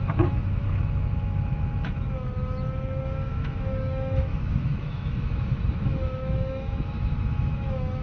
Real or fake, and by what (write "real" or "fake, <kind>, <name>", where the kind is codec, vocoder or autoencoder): fake, autoencoder, DAC-VAE